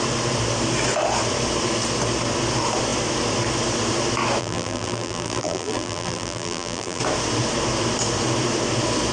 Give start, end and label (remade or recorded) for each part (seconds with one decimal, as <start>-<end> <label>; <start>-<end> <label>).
0.0-4.4 recorded; 4.4-7.0 remade; 7.0-9.1 recorded